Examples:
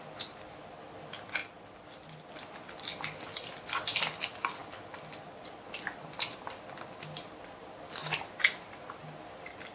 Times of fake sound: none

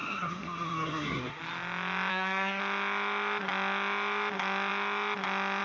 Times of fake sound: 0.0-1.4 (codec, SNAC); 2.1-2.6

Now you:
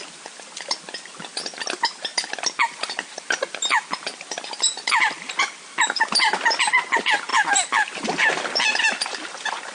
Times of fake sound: none